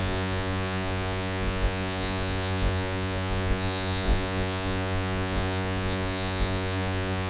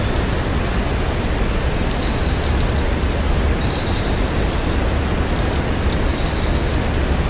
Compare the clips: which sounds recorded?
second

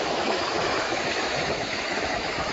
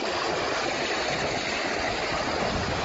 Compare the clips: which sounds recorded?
second